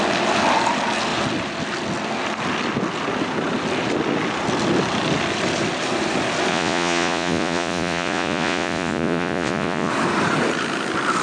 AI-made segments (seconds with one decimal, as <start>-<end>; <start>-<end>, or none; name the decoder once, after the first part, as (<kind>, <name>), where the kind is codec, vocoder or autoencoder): 6.5-9.9 (vocoder, Vocos)